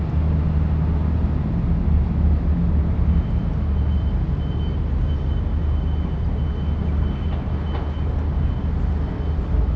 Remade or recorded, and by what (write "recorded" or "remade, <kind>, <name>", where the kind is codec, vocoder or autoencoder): recorded